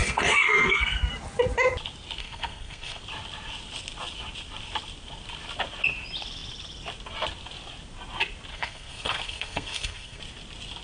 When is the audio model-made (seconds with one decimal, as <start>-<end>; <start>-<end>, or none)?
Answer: 0.0-1.1; 2.2-3.0; 8.5-10.2